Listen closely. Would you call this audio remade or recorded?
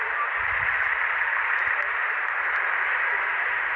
recorded